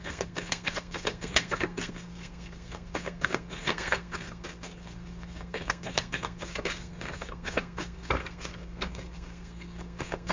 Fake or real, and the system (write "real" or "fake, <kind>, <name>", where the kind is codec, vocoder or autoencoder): fake, codec, SNAC